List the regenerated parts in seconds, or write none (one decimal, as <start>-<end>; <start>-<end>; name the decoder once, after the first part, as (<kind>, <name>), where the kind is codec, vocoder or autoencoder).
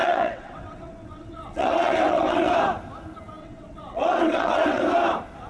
0.0-2.5 (vocoder, WaveNeXt); 3.4-4.8